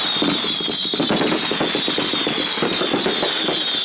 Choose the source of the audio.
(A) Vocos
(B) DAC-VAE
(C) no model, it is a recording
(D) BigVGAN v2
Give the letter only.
C